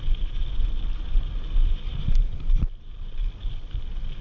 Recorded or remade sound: recorded